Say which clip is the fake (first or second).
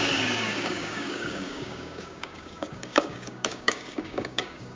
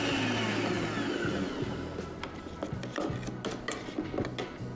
first